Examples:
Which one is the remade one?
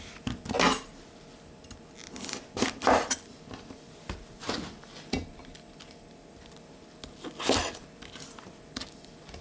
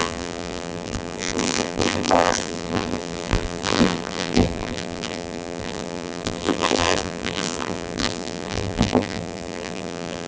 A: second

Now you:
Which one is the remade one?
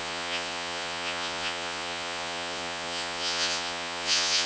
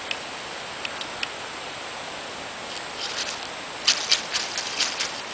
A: first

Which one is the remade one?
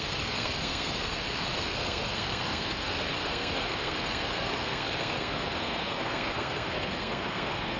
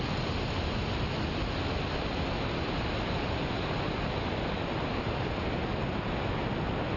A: first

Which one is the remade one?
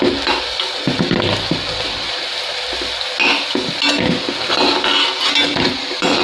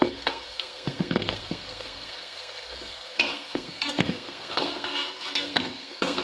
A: second